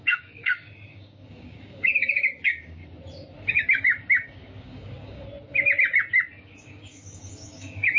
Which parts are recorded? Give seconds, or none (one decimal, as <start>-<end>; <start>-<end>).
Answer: 2.8-3.5; 5.3-6.4

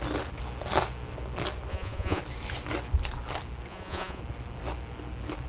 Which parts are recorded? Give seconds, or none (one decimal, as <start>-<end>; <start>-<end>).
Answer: 0.0-1.7; 2.2-3.7; 4.2-5.5

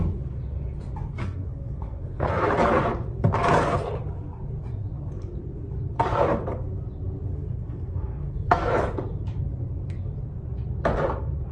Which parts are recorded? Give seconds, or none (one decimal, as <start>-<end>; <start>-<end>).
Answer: 0.0-1.2; 2.4-7.3; 8.7-11.5

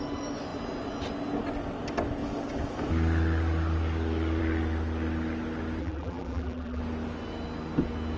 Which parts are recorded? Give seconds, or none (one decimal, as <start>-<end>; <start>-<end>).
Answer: 0.0-5.8; 6.8-8.2

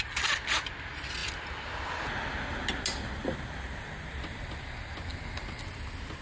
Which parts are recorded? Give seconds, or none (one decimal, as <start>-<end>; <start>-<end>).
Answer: 0.0-6.2

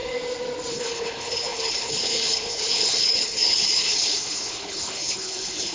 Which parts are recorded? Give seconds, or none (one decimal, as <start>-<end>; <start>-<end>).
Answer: 0.0-0.7

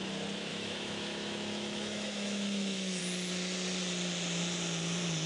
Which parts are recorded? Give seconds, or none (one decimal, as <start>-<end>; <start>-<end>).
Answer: 0.0-0.5; 3.0-5.3

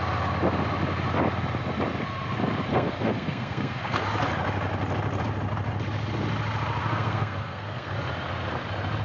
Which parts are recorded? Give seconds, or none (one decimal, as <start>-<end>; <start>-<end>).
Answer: 0.0-2.7; 4.0-6.8; 7.9-9.0